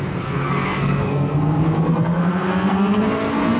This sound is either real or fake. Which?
fake